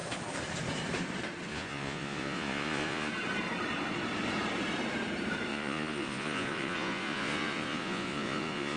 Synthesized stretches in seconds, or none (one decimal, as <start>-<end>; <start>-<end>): 1.5-3.1; 5.5-8.8